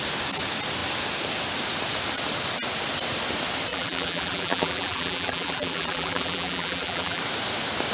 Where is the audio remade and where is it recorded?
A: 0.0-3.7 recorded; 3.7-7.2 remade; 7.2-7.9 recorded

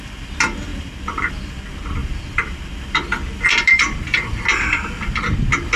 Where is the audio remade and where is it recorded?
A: 0.0-0.7 recorded; 0.7-1.3 remade; 1.3-2.0 recorded; 2.0-4.4 remade; 4.4-5.8 recorded

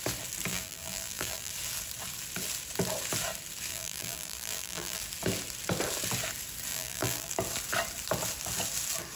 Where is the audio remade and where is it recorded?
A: 0.0-0.5 recorded; 0.5-1.5 remade; 1.5-3.7 recorded; 3.7-5.0 remade; 5.0-6.7 recorded; 6.7-7.3 remade; 7.3-9.2 recorded

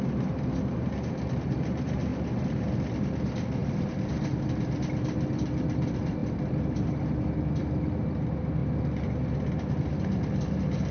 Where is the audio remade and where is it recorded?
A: 0.0-2.1 remade; 2.1-2.9 recorded; 2.9-8.6 remade; 8.6-9.8 recorded; 9.8-10.9 remade

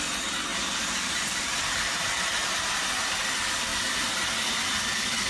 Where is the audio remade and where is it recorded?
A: 0.0-0.5 recorded; 0.5-2.1 remade; 2.1-5.3 recorded

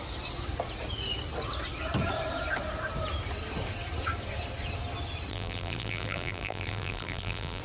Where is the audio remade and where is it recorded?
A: 0.0-5.3 recorded; 5.3-7.6 remade

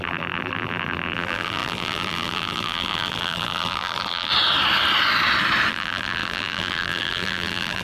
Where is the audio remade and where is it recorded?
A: 0.0-4.3 remade; 4.3-5.7 recorded; 5.7-7.8 remade